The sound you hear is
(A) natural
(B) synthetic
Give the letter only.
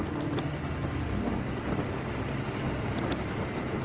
A